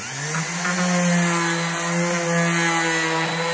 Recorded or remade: recorded